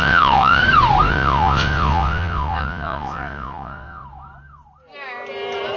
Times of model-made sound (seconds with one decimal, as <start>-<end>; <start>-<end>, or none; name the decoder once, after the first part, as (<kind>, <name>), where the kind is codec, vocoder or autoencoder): 0.0-0.6 (vocoder, WaveNeXt); 1.1-4.0